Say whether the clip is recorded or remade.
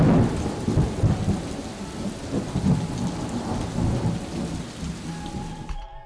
recorded